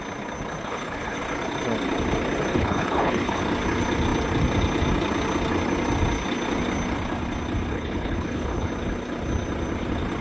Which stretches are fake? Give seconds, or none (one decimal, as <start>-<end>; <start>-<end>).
0.6-1.2; 2.5-3.4; 7.7-8.7

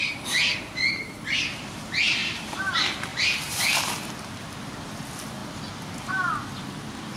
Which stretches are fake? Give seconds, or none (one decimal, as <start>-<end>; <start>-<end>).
2.2-2.7; 3.1-4.1

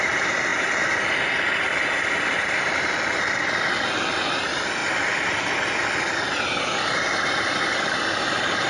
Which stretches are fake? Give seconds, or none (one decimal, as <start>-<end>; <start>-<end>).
0.0-0.5; 2.0-4.8; 8.1-8.7

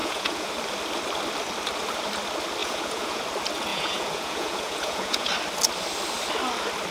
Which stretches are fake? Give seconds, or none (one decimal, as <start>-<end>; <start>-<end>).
0.0-0.5; 2.6-3.2; 3.7-5.3

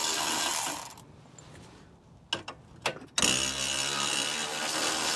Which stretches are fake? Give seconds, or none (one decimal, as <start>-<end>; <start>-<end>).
none

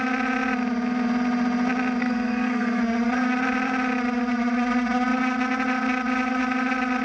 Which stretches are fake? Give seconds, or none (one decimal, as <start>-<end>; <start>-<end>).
2.0-2.8

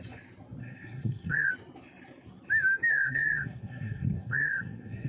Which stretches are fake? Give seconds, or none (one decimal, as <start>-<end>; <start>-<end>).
0.6-1.5; 2.9-5.1

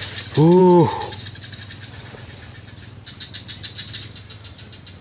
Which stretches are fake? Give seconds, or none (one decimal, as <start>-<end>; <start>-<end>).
none